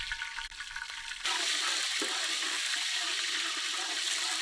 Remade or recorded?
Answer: recorded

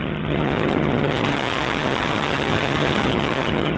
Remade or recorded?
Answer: remade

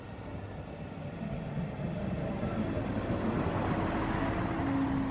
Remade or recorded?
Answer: recorded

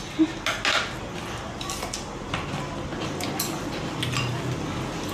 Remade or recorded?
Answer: recorded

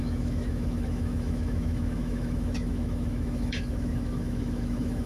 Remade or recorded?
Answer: remade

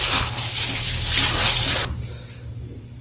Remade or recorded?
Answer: recorded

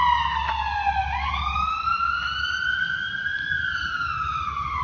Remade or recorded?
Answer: recorded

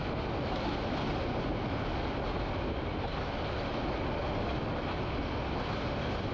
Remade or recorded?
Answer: recorded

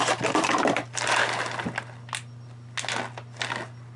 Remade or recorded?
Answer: recorded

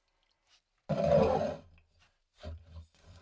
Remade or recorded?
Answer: recorded